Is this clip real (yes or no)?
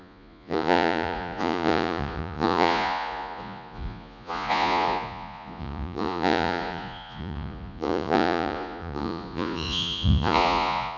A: no